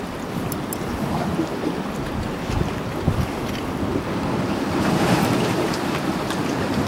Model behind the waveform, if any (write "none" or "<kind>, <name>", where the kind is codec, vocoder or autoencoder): none